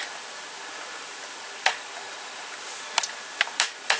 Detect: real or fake real